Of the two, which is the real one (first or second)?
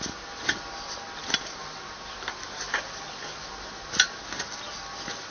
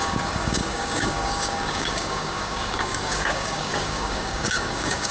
first